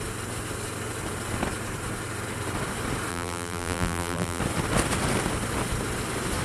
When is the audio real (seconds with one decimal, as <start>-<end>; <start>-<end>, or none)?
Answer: 0.0-3.1; 4.4-6.4